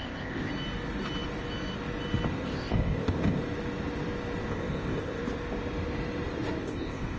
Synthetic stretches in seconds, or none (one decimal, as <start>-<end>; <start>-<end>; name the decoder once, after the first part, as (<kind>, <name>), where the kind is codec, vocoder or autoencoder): 0.0-0.5 (codec, ZipCodec); 2.3-3.4; 4.5-5.2; 6.6-7.2